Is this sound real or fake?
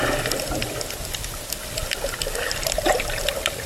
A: real